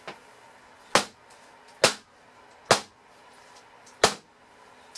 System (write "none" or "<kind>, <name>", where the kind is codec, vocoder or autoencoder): none